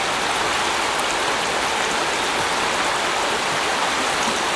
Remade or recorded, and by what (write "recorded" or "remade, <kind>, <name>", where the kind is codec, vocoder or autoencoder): recorded